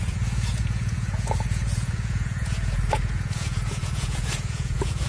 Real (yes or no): no